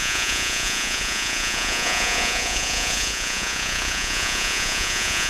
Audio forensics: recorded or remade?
remade